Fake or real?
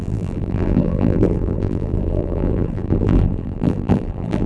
fake